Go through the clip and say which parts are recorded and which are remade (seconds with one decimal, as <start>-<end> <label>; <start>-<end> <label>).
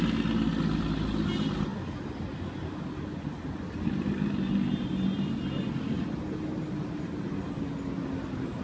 0.0-8.6 recorded